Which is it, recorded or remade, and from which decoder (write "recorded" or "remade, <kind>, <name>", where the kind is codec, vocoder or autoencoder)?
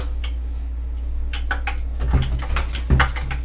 recorded